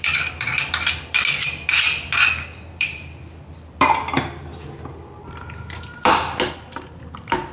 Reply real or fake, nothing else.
fake